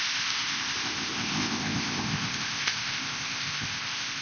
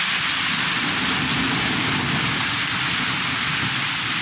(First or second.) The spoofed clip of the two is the first